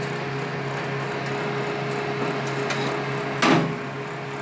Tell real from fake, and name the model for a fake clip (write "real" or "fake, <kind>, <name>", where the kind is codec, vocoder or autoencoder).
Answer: real